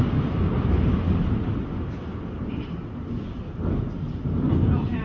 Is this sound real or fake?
real